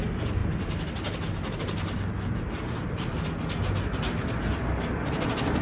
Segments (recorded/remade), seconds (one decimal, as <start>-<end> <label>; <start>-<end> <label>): 0.0-5.6 recorded